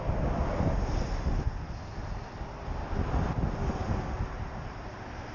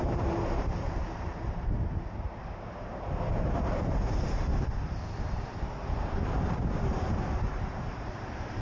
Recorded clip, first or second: first